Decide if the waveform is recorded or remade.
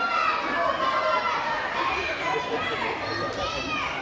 recorded